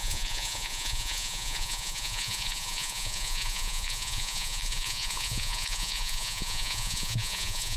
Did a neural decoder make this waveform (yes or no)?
yes